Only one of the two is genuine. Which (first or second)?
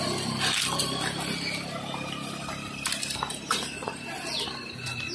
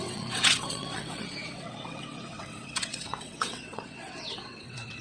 first